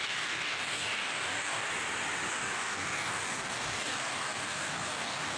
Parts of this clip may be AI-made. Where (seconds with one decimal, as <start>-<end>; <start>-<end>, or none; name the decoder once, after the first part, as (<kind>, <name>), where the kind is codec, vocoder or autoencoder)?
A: 0.0-1.7 (codec, DAC); 2.3-5.4